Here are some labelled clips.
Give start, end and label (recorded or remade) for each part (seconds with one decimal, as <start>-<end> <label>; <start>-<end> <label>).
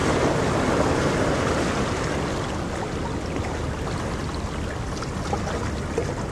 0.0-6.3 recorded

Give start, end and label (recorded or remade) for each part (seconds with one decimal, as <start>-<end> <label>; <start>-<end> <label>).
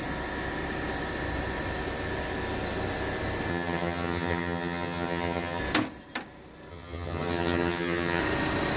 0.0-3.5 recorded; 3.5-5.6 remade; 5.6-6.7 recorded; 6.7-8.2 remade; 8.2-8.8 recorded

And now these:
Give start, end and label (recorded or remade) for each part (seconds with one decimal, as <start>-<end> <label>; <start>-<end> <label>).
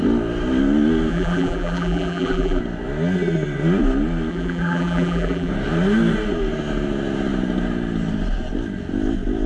0.0-1.1 recorded; 1.1-2.6 remade; 2.6-4.3 recorded; 4.3-5.5 remade; 5.5-9.5 recorded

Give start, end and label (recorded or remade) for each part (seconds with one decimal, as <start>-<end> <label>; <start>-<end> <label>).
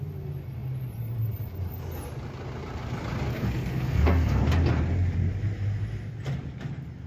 0.0-3.3 recorded; 3.3-4.4 remade; 4.4-7.1 recorded